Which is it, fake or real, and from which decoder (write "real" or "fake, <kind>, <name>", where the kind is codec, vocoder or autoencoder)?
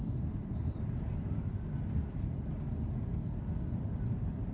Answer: real